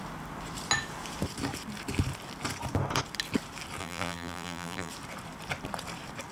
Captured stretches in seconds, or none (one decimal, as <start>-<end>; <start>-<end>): 0.0-3.8; 4.9-6.3